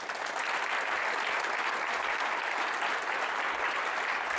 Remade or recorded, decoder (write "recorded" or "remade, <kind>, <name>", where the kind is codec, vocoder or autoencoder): recorded